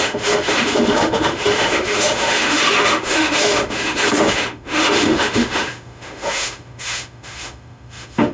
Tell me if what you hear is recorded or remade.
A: remade